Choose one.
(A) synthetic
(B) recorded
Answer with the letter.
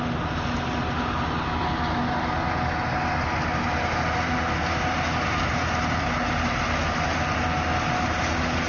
B